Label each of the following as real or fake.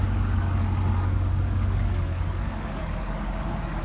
fake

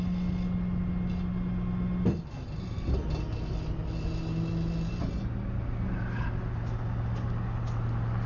real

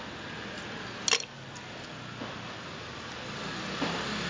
real